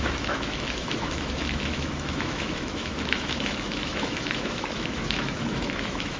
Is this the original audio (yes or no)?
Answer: no